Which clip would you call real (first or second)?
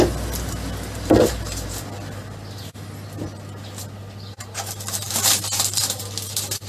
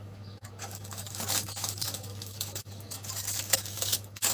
first